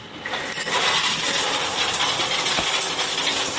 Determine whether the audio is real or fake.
real